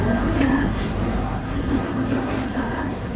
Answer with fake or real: fake